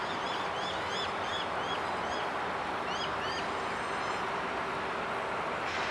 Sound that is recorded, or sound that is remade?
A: recorded